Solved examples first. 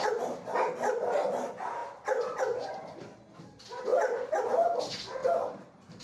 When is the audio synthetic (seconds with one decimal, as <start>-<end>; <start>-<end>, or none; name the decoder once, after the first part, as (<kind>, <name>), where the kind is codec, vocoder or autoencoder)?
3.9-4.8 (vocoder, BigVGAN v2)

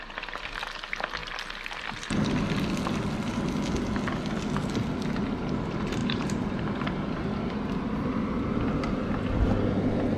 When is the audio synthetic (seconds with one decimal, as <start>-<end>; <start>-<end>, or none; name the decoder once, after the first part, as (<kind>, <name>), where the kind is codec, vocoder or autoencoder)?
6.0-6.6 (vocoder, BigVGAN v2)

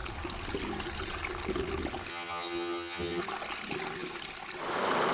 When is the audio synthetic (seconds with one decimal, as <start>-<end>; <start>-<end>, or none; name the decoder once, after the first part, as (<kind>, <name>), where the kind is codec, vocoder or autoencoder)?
2.1-3.2 (vocoder, HiFi-GAN)